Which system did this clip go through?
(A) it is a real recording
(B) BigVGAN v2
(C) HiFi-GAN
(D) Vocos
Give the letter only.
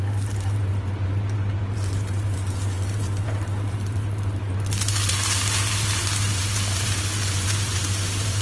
B